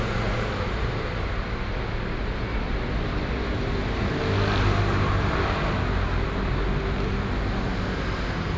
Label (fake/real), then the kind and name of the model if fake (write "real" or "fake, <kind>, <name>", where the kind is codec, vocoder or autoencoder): real